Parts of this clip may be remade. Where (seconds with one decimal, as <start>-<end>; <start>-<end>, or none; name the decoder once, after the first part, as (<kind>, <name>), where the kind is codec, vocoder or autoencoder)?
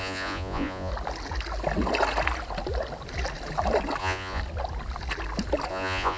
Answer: 0.0-0.9 (vocoder, Vocos); 4.0-4.4; 5.7-6.2